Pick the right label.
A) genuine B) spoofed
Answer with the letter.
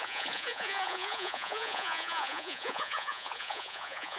B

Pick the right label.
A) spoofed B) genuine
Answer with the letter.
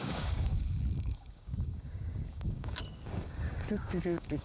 A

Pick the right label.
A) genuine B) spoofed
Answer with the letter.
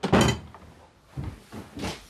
A